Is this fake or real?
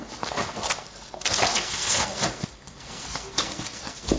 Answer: fake